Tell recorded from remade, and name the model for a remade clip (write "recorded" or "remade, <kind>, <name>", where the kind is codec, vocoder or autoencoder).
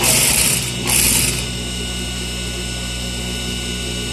recorded